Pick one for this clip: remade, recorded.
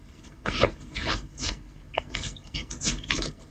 remade